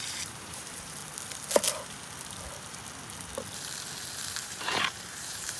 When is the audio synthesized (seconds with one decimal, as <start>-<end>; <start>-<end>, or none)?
0.0-1.0; 4.1-5.6